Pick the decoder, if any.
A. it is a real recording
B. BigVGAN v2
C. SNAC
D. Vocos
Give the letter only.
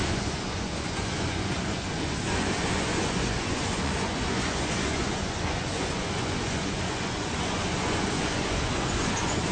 D